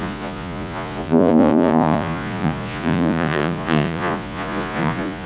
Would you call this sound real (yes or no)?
no